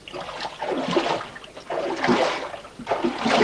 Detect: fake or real real